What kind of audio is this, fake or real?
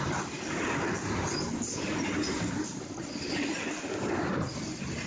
real